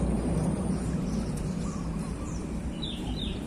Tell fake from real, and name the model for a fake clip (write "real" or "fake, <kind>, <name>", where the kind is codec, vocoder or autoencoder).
fake, vocoder, BigVGAN v2